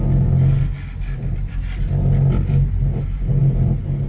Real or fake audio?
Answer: real